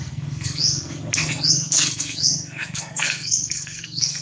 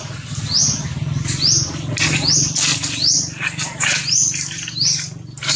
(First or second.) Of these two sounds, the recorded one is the second